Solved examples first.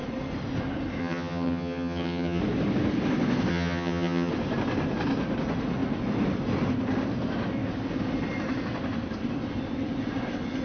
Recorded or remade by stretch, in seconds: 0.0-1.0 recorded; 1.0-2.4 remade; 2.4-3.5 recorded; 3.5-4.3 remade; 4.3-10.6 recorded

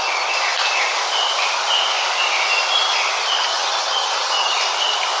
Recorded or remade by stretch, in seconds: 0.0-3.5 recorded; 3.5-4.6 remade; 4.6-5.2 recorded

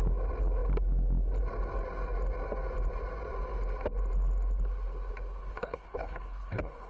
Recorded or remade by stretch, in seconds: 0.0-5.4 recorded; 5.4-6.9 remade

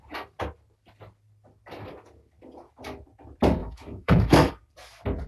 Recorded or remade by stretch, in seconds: 0.0-3.6 recorded; 3.6-4.5 remade; 4.5-5.3 recorded